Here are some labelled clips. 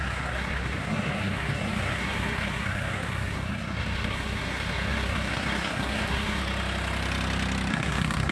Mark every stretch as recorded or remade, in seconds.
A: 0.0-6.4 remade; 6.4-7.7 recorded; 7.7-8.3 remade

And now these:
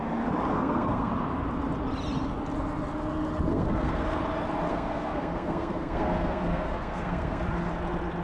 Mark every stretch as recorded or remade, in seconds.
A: 0.0-0.5 recorded; 0.5-1.1 remade; 1.1-3.5 recorded; 3.5-4.2 remade; 4.2-4.7 recorded; 4.7-7.4 remade; 7.4-8.2 recorded

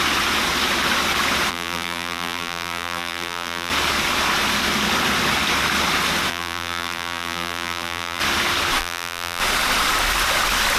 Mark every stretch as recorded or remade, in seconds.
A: 0.0-1.5 recorded; 1.5-3.7 remade; 3.7-6.3 recorded; 6.3-8.2 remade; 8.2-8.8 recorded; 8.8-9.4 remade; 9.4-10.8 recorded

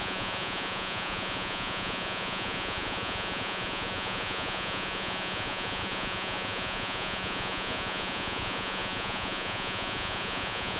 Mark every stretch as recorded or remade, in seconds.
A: 0.0-10.8 remade

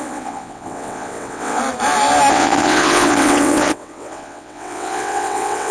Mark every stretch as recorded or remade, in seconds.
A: 0.0-1.6 remade; 1.6-2.3 recorded; 2.3-5.7 remade

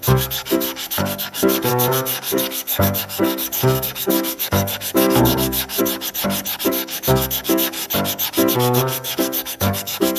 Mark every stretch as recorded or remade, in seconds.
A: 0.0-5.8 remade; 5.8-6.7 recorded; 6.7-7.8 remade; 7.8-8.5 recorded; 8.5-10.2 remade

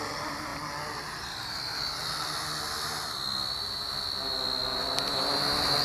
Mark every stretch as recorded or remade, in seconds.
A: 0.0-5.8 recorded

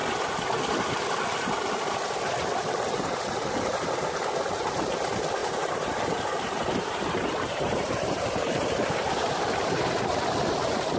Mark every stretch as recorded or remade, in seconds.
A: 0.0-0.6 remade; 0.6-5.4 recorded; 5.4-9.4 remade; 9.4-11.0 recorded